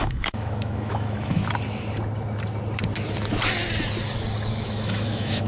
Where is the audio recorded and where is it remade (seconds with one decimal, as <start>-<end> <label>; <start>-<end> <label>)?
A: 0.0-1.4 remade; 1.4-4.5 recorded; 4.5-5.5 remade